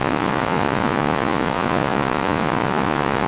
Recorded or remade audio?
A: remade